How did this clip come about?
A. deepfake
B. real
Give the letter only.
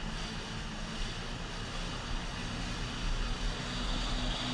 B